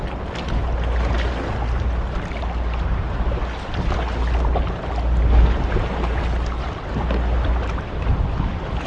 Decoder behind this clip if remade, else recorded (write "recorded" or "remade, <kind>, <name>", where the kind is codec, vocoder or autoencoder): recorded